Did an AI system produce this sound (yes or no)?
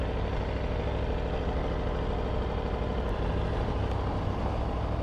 no